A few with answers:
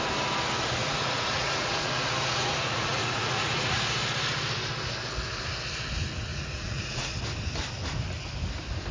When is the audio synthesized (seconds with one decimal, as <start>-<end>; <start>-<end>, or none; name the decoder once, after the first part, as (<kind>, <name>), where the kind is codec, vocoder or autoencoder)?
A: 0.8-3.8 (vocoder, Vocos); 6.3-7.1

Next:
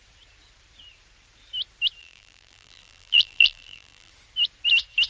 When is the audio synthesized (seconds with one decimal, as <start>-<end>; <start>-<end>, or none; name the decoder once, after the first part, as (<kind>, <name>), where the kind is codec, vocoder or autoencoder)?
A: 2.0-4.1 (vocoder, BigVGAN v2)

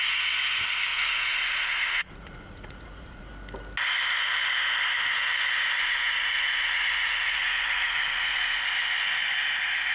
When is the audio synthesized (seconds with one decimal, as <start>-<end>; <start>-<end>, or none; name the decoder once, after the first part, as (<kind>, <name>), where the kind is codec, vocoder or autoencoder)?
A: 0.9-3.3 (vocoder, Vocos); 5.8-8.6

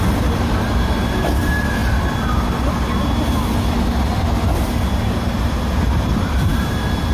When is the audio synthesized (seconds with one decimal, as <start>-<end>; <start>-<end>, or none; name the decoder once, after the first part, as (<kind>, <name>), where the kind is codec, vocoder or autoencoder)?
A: none

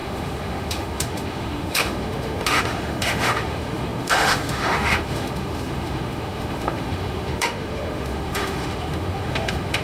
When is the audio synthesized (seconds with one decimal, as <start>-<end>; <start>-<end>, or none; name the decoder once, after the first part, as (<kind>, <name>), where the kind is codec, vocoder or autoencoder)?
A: 0.0-9.8 (autoencoder, DAC-VAE)

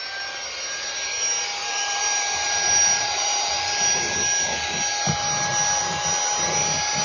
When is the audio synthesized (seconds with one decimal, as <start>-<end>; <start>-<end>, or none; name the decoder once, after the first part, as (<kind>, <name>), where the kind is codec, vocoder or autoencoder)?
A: 1.6-3.5 (vocoder, BigVGAN v2)

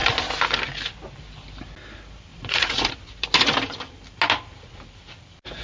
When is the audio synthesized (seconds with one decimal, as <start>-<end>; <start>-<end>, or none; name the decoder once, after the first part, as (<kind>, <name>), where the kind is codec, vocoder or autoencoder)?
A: 2.3-2.9 (vocoder, Vocos)

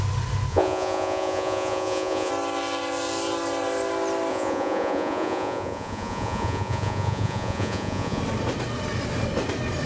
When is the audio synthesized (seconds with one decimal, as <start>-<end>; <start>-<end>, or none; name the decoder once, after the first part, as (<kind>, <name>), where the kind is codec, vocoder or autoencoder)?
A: 0.5-2.3 (vocoder, Vocos); 4.3-8.2